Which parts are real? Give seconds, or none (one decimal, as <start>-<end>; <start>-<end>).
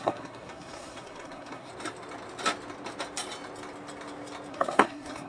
1.7-4.5